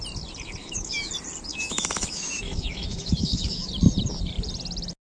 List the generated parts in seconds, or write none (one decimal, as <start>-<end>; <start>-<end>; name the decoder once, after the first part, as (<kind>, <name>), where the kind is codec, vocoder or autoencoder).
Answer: 0.6-1.1 (autoencoder, DAC-VAE); 1.5-3.7